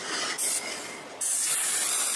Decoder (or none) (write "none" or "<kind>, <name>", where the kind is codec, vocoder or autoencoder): none